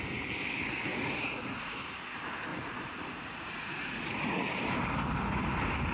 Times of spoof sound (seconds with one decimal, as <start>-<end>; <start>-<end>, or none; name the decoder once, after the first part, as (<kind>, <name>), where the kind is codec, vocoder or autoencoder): 0.9-1.8 (vocoder, Vocos); 2.5-4.5